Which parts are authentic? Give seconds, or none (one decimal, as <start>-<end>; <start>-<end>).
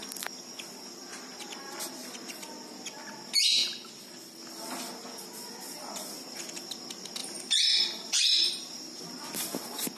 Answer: 2.3-7.2; 9.0-10.0